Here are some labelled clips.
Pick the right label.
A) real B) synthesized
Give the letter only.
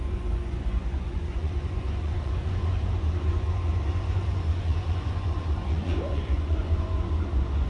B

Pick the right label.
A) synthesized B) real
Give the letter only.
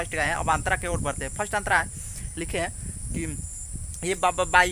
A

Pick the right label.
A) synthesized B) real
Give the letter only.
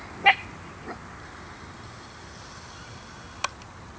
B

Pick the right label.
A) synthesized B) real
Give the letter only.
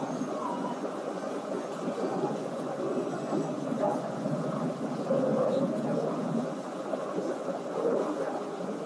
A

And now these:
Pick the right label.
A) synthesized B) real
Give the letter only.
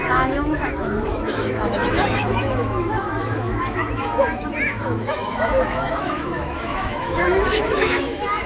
A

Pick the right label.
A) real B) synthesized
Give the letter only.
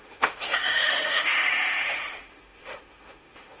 B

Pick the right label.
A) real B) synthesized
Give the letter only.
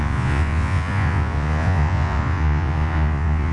B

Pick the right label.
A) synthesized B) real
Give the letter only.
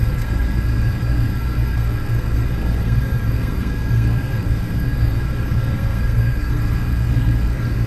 A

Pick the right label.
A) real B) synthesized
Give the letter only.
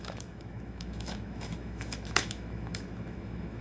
B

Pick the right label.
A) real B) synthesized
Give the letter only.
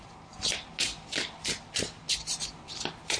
A